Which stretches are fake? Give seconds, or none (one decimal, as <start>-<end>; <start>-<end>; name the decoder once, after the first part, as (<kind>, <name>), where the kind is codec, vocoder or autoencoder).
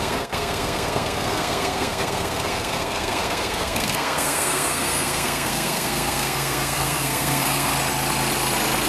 0.0-7.7 (codec, SNAC)